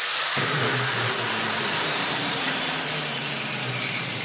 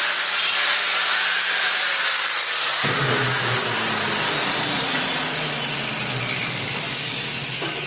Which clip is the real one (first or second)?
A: second